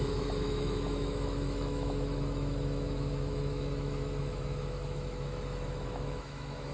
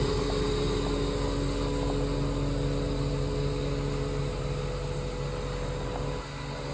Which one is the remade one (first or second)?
first